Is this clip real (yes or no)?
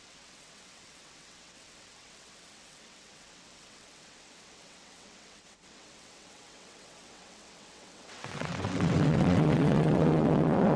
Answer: no